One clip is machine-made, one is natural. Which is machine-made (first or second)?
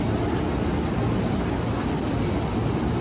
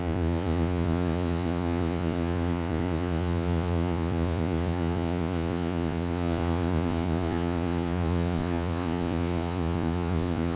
second